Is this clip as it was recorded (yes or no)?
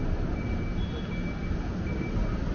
yes